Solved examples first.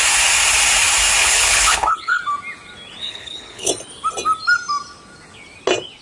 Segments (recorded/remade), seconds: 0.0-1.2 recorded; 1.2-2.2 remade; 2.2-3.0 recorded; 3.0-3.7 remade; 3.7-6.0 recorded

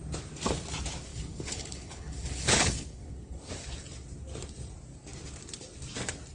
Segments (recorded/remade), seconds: 0.0-1.1 recorded; 1.1-3.5 remade; 3.5-6.3 recorded

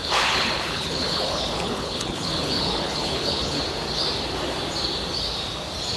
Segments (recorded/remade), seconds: 0.0-3.6 remade; 3.6-6.0 recorded

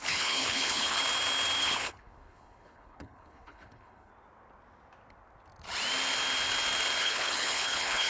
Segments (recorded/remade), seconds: 0.0-1.0 remade; 1.0-1.6 recorded; 1.6-4.1 remade; 4.1-7.0 recorded; 7.0-8.1 remade

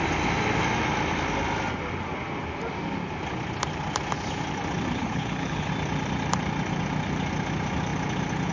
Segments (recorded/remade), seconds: 0.0-5.0 recorded; 5.0-5.7 remade; 5.7-8.5 recorded

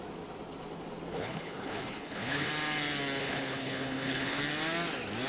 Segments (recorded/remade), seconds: 0.0-1.1 recorded; 1.1-2.5 remade; 2.5-3.2 recorded; 3.2-4.4 remade; 4.4-5.3 recorded

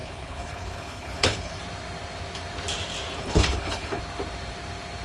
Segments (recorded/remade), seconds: 0.0-1.6 remade; 1.6-3.2 recorded; 3.2-4.0 remade; 4.0-5.0 recorded

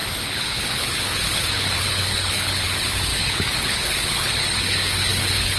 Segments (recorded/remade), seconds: 0.0-5.6 remade